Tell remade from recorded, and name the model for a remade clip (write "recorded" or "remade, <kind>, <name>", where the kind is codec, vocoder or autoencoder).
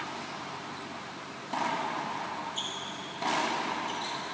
recorded